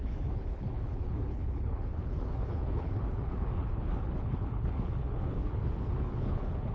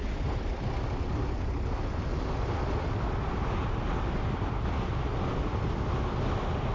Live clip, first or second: second